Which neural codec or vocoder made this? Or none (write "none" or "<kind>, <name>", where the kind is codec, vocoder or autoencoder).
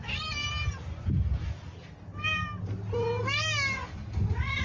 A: none